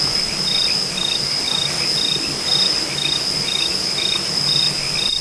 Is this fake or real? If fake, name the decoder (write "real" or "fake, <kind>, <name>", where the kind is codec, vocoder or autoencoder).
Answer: real